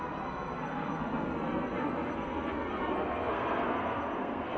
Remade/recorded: remade